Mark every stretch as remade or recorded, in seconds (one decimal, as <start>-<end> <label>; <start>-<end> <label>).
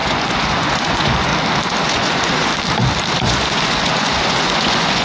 0.0-1.3 remade; 1.3-1.8 recorded; 1.8-2.5 remade; 2.5-3.1 recorded; 3.1-5.0 remade